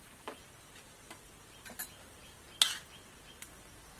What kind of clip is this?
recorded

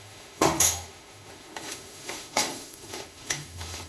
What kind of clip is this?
remade